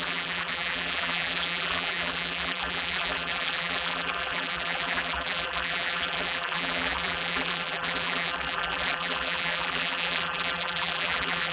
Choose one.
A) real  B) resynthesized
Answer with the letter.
B